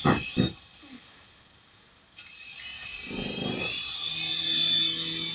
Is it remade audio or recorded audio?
recorded